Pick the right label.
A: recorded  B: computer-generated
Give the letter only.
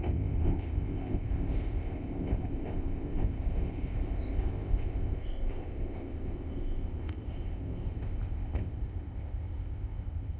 B